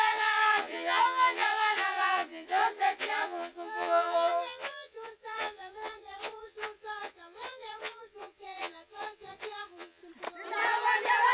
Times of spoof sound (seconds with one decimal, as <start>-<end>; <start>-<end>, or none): 0.0-10.0